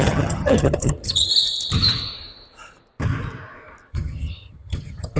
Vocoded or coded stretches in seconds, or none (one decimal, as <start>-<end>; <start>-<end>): 0.0-1.3; 3.9-5.2